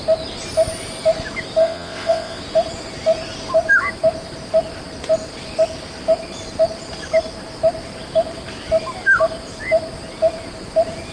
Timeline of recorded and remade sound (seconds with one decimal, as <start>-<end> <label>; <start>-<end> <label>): 0.0-1.6 recorded; 1.6-2.4 remade; 2.4-11.1 recorded